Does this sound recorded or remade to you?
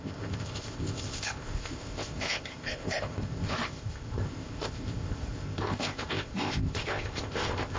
remade